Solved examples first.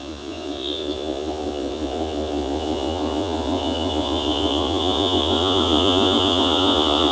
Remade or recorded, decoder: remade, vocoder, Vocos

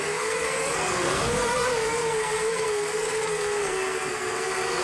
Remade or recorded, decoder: remade, codec, SNAC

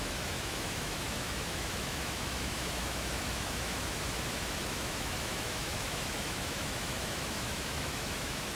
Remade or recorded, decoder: remade, autoencoder, DAC-VAE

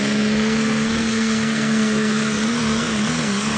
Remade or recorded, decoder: remade, codec, SNAC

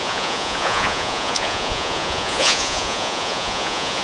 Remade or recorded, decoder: remade, vocoder, Vocos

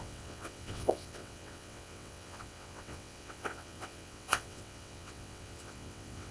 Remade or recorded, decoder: remade, vocoder, WaveNeXt